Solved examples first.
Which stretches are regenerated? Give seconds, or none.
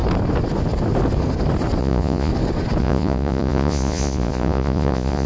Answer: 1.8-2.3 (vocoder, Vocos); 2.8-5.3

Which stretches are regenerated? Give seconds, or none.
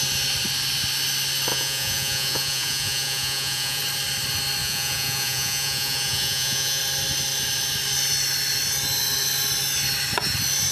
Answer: 1.5-3.8 (vocoder, Vocos); 4.6-6.8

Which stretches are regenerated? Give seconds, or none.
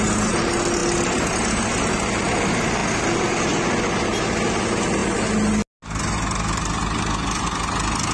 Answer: none